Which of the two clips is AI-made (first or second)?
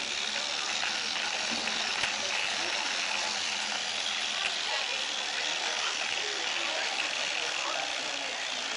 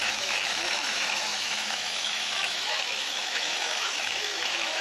second